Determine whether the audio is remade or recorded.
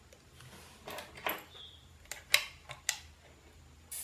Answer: recorded